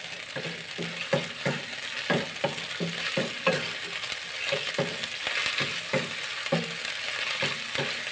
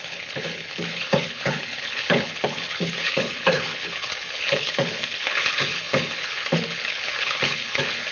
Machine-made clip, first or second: second